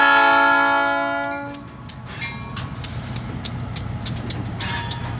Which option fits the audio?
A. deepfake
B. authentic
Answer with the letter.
B